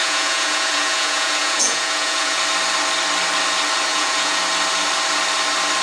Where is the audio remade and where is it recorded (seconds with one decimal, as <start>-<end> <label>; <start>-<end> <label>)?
0.0-2.4 remade; 2.4-3.9 recorded; 3.9-4.4 remade; 4.4-5.8 recorded